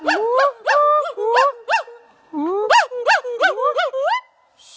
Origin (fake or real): real